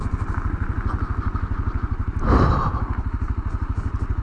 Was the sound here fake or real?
real